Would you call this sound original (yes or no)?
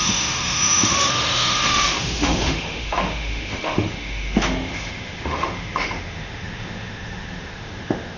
no